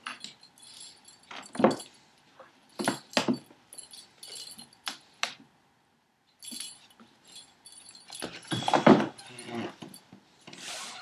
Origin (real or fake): real